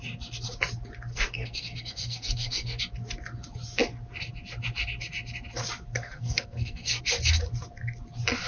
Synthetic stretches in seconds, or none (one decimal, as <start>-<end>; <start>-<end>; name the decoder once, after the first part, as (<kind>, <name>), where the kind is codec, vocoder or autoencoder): 1.1-2.8 (codec, SNAC); 5.9-7.0